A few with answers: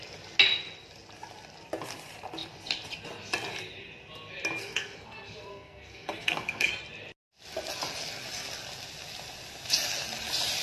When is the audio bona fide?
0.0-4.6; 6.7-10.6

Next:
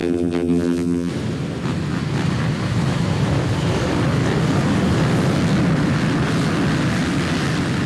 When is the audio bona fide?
1.1-7.9

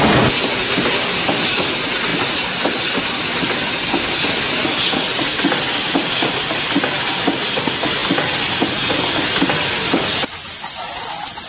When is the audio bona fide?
0.0-11.5